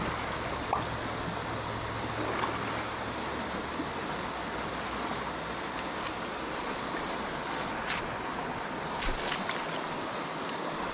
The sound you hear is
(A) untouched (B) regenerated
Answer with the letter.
A